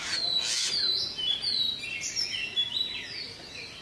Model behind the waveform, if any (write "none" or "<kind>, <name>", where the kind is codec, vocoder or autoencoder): none